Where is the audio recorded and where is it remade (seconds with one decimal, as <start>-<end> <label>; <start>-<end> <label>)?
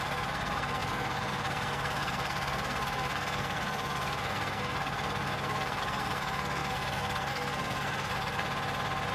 0.0-8.4 remade; 8.4-9.1 recorded